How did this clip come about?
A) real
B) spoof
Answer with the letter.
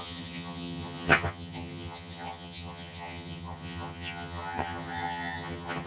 B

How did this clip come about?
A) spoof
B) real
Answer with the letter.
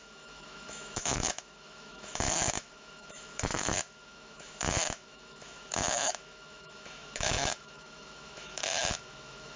A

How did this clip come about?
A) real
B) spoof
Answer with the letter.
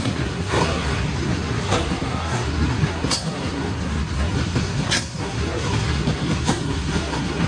B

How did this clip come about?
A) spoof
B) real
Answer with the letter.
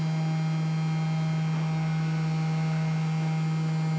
B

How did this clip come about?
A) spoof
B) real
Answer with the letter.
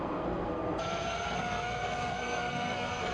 A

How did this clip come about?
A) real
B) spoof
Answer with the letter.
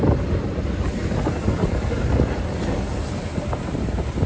B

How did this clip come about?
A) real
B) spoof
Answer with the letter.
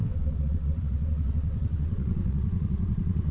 B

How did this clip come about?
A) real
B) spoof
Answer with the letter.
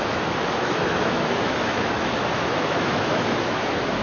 B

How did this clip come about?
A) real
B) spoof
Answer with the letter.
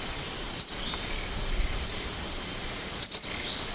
A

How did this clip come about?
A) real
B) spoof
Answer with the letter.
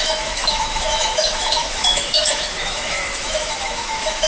B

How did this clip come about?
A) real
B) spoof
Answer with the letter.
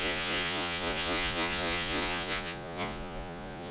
B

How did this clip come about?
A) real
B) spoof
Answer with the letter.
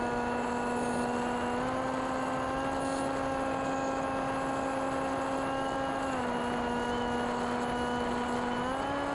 A